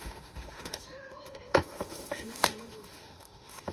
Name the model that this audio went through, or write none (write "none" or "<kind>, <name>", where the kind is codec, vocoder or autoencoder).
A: autoencoder, DAC-VAE